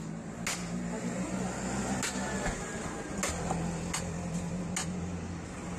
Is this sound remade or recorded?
recorded